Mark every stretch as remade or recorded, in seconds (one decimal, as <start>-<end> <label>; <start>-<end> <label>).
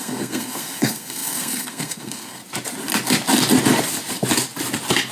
0.0-2.4 remade; 2.4-5.1 recorded